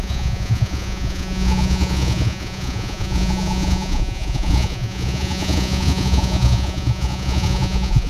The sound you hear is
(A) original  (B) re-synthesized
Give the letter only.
B